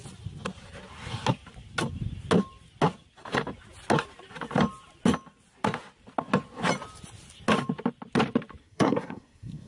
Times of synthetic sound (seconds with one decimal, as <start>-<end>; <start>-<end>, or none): 8.6-9.7